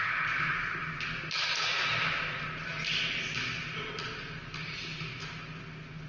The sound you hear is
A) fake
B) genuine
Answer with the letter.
B